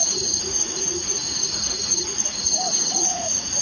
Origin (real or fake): fake